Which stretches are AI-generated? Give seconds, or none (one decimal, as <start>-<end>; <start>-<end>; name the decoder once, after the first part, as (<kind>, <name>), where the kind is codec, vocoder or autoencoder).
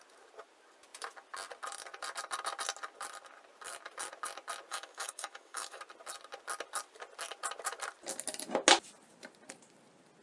4.7-5.8 (autoencoder, DAC-VAE)